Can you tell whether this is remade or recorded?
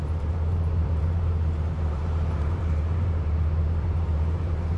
remade